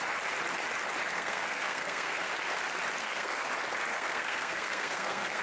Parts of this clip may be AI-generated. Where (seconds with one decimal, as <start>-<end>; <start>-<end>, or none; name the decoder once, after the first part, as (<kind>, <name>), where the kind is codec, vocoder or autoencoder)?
1.1-2.3 (codec, SNAC); 3.0-3.5; 3.9-5.4